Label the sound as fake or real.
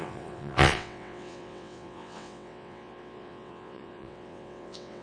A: fake